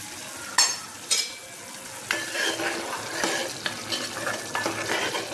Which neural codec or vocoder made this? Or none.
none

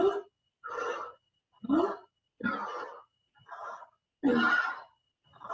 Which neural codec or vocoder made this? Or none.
none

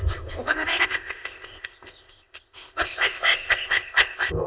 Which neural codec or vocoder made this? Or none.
codec, ZipCodec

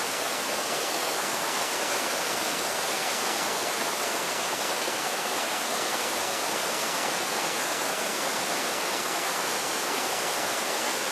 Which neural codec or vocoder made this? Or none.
codec, SNAC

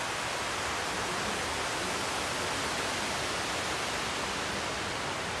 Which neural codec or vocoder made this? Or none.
none